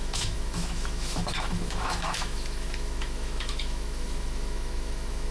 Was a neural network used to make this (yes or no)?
yes